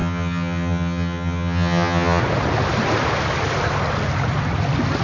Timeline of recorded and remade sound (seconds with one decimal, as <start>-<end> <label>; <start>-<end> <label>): 0.0-2.2 remade; 2.2-5.0 recorded